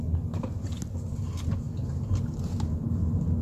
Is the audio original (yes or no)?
yes